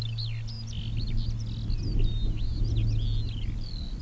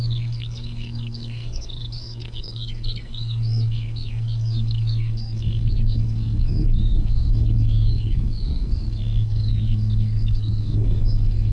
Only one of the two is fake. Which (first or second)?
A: second